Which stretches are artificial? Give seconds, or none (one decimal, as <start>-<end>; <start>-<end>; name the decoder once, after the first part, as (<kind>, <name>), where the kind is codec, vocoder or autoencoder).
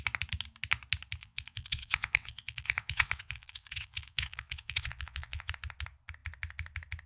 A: 1.2-5.5 (vocoder, WaveNeXt)